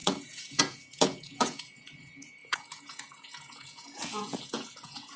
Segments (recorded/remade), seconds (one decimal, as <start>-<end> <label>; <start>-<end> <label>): 0.0-5.2 remade